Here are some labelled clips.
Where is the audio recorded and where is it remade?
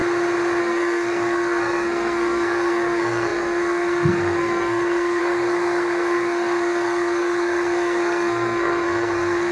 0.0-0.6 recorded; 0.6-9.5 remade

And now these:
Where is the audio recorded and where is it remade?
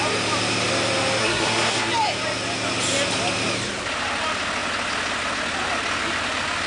0.0-1.2 recorded; 1.2-1.9 remade; 1.9-6.7 recorded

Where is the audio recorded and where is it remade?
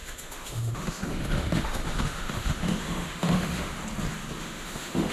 0.0-3.8 remade; 3.8-4.4 recorded; 4.4-5.1 remade